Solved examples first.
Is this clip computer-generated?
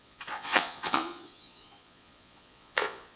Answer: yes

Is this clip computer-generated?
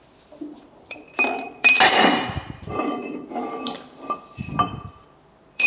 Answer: yes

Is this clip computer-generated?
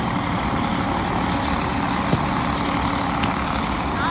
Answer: no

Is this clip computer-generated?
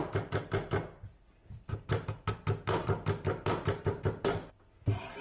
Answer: no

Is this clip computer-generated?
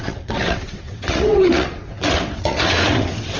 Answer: yes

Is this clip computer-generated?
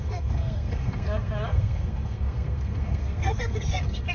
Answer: yes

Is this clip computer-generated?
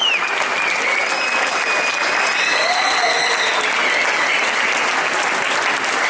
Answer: no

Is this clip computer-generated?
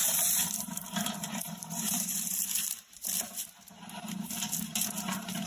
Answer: yes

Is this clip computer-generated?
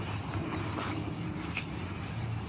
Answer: no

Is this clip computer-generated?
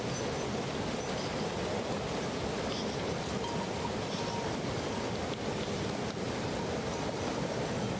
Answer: no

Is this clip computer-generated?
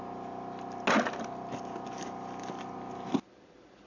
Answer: no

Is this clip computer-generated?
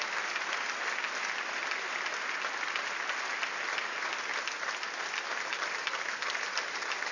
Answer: no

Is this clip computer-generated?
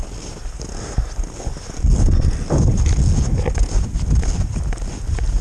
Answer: no